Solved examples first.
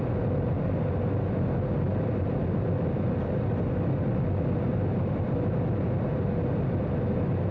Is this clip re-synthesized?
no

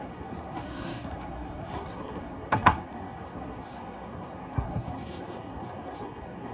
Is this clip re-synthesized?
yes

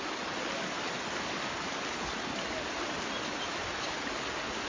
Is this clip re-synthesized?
no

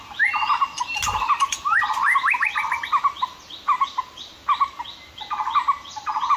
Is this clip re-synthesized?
no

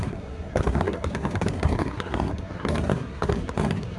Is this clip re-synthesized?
yes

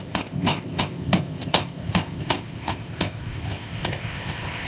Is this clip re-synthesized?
yes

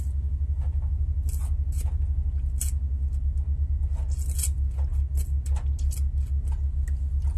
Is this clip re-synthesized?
no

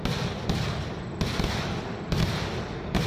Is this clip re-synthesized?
no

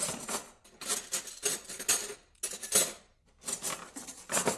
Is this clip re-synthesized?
no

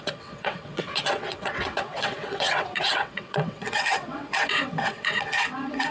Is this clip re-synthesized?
yes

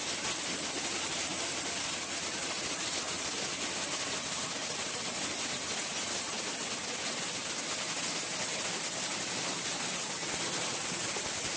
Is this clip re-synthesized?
no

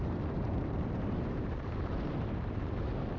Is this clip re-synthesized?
yes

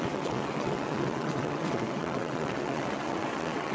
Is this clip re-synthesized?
yes